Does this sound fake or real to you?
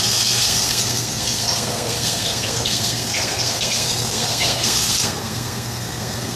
fake